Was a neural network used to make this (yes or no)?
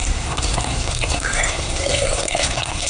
yes